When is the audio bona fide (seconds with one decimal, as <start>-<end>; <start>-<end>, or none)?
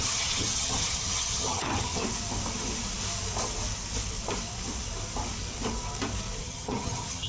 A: 2.0-6.4